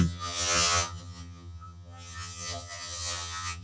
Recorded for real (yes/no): no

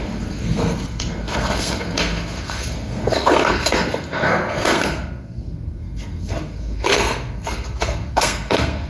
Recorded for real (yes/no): no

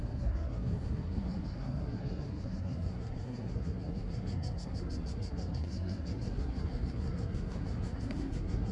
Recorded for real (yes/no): no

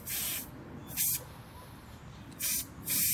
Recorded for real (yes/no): yes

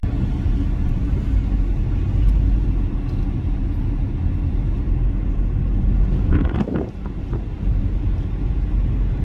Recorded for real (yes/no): yes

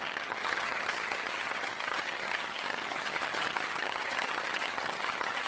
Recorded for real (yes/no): no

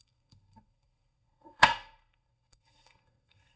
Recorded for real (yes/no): no